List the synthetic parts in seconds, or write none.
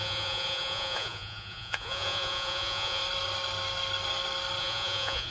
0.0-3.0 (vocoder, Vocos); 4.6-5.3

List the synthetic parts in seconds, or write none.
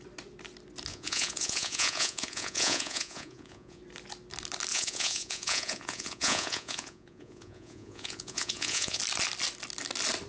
0.9-3.8 (vocoder, Vocos); 4.7-9.0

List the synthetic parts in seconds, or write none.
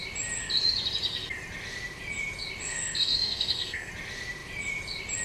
2.6-3.9 (codec, SNAC)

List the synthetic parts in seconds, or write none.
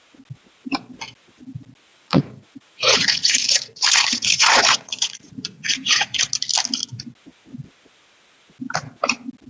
1.9-6.3 (vocoder, Vocos)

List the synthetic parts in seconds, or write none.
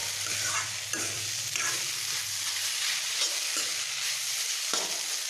0.0-3.2 (vocoder, BigVGAN v2)